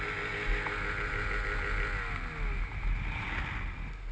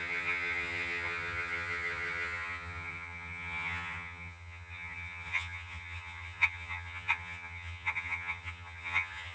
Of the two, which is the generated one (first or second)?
second